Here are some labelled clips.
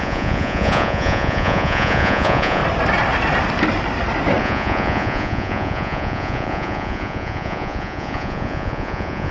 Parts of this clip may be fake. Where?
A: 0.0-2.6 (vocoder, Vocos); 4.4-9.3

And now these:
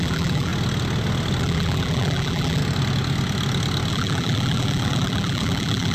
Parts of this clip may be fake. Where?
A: 0.0-0.5 (vocoder, BigVGAN v2); 1.4-2.6; 3.9-5.9

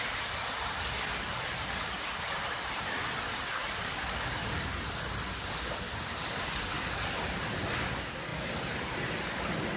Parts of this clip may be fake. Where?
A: 3.6-4.7 (vocoder, BigVGAN v2)

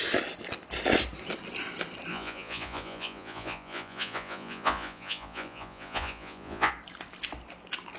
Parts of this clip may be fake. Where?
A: 2.1-6.7 (vocoder, Vocos)

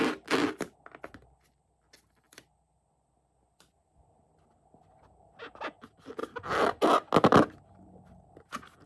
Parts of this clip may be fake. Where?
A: none